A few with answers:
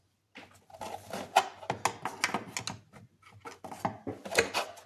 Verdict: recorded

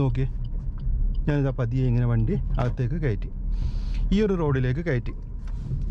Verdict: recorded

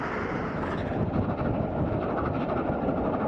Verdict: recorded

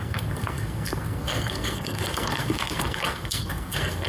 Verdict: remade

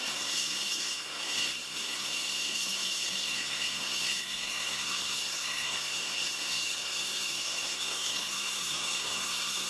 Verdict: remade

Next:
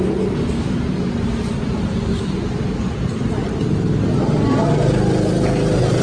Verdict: recorded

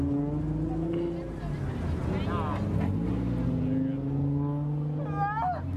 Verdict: recorded